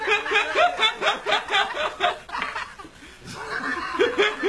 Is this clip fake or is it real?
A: real